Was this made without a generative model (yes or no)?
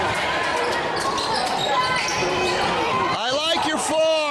yes